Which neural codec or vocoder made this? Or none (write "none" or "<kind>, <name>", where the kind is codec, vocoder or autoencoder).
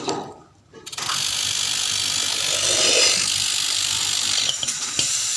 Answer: vocoder, BigVGAN v2